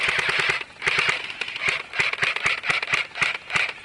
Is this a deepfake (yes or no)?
no